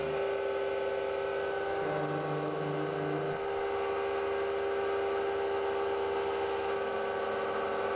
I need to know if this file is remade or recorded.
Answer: recorded